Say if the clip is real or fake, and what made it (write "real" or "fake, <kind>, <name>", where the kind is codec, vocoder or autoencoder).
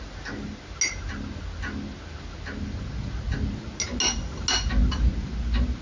real